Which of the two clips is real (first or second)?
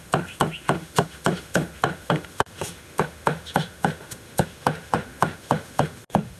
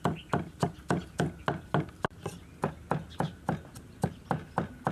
second